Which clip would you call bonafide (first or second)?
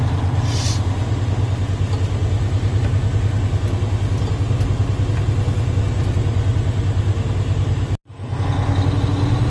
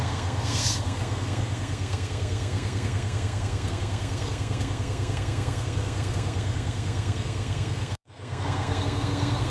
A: first